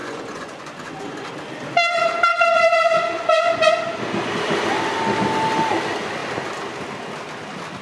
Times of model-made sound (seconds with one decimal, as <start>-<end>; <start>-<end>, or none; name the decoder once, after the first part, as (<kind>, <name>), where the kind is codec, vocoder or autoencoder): 0.0-1.3 (vocoder, Vocos); 2.3-3.7